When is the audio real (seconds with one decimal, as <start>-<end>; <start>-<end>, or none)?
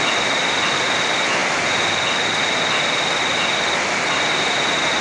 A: 0.0-5.0